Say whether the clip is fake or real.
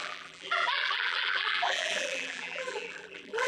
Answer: fake